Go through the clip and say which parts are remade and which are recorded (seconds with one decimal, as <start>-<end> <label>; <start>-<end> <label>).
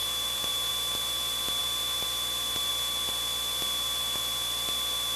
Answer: 0.0-0.7 remade; 0.7-5.2 recorded